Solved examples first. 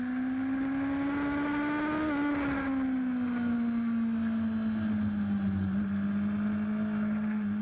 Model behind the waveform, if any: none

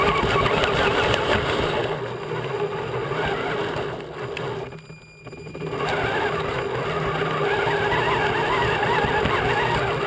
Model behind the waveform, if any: none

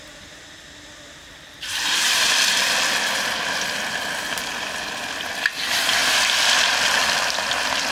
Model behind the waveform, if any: none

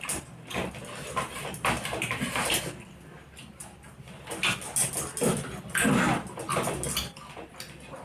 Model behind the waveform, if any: none